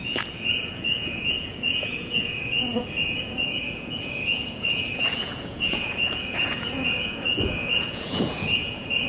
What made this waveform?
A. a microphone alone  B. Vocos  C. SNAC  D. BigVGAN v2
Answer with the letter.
B